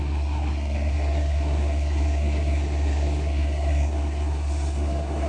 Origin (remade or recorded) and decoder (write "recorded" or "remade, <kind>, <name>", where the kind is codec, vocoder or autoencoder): remade, codec, SNAC